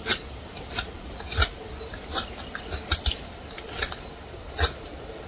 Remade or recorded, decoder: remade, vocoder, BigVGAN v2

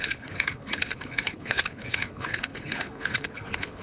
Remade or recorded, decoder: remade, codec, HILCodec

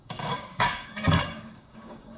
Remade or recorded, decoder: remade, codec, DAC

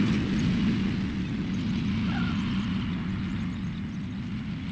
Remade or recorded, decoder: recorded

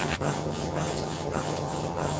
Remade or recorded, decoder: remade, vocoder, HiFi-GAN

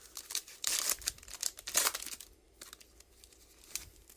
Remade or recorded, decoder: recorded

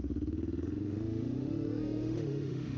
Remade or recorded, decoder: remade, autoencoder, DAC-VAE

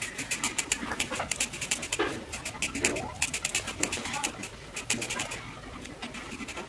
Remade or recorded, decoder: recorded